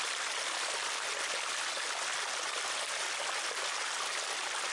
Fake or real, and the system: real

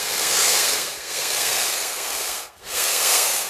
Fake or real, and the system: fake, codec, SNAC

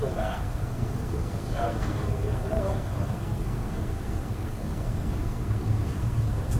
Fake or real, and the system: fake, codec, SNAC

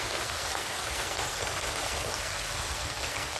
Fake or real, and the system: fake, codec, SNAC